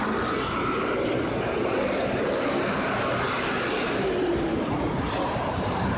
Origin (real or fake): fake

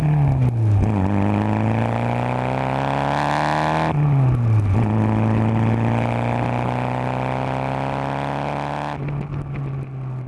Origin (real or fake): real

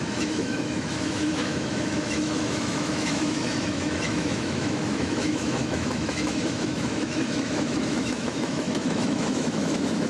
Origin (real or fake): fake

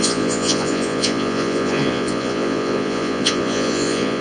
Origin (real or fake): fake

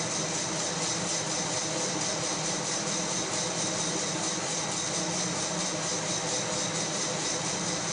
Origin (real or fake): real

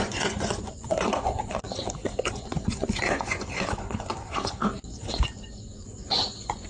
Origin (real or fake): fake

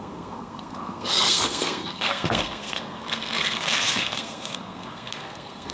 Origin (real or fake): fake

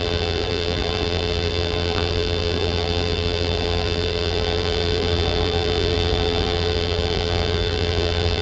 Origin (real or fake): fake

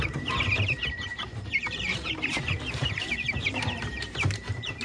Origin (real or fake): fake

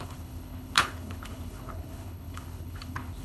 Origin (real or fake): fake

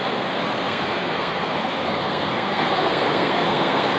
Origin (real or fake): fake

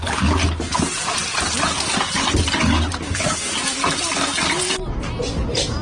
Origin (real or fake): real